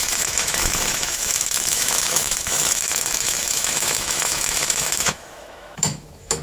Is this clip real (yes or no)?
no